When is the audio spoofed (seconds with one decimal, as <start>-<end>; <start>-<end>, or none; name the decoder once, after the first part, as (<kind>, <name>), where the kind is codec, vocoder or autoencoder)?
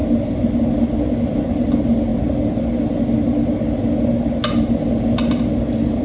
none